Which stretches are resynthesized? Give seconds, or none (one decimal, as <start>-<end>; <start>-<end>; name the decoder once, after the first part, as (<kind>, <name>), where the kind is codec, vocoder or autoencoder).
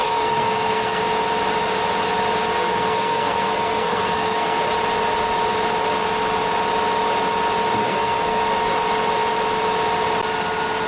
0.0-1.0 (codec, SNAC); 2.6-4.6; 7.8-8.4